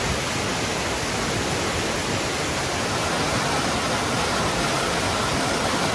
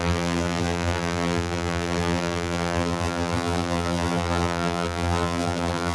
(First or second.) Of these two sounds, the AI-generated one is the second